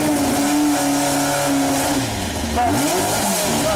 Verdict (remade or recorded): recorded